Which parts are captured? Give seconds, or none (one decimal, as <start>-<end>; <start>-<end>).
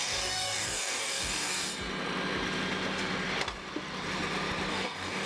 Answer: 1.7-4.7